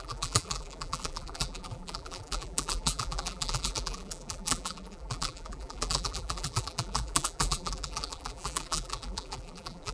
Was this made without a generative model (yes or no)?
no